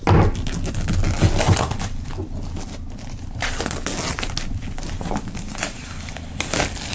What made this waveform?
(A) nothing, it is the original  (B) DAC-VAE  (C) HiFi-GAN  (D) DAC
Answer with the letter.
A